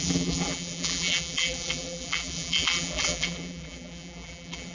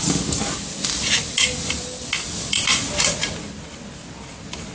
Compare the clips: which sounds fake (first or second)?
first